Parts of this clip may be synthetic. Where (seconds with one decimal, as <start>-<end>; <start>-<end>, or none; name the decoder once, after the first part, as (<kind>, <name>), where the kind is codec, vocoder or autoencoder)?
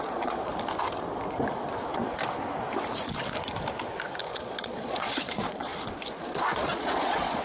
0.0-0.5 (vocoder, Vocos); 4.2-5.7; 6.2-7.4